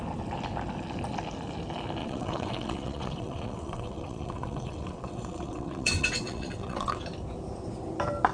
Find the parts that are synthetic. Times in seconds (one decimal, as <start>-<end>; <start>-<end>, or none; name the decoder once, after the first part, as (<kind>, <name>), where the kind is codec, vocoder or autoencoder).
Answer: 2.0-7.0 (vocoder, WaveNeXt)